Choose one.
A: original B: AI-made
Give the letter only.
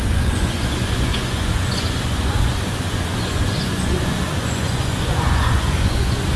B